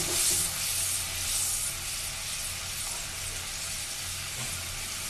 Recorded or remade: recorded